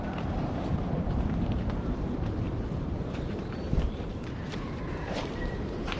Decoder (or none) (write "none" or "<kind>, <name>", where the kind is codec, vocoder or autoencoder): vocoder, BigVGAN v2